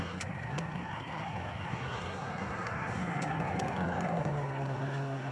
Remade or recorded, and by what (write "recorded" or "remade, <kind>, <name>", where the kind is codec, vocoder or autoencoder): remade, codec, SNAC